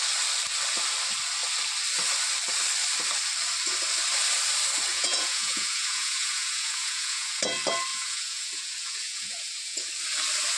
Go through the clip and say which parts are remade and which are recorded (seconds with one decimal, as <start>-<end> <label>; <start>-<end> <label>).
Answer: 0.0-4.9 recorded; 4.9-7.4 remade; 7.4-7.9 recorded; 7.9-9.9 remade; 9.9-10.6 recorded